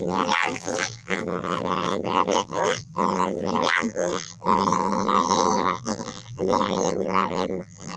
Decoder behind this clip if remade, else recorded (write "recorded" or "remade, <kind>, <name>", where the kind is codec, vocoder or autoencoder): remade, vocoder, BigVGAN v2